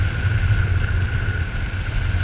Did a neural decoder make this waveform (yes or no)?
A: no